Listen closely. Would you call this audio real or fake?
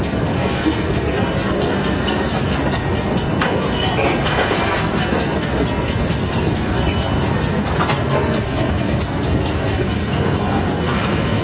fake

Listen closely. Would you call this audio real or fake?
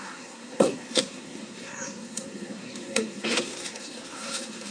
fake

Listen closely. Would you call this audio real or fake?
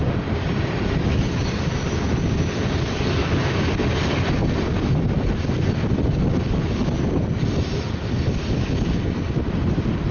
real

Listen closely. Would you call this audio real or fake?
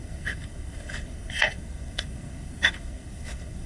fake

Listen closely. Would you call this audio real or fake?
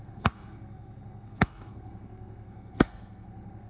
fake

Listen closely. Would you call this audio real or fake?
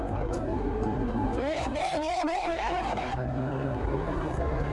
fake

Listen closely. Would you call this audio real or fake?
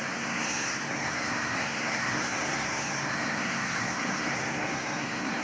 fake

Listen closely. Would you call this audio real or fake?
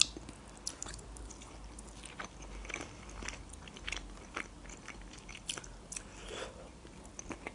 real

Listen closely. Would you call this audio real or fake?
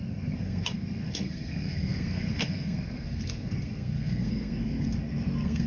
fake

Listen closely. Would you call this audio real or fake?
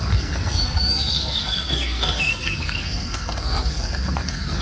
fake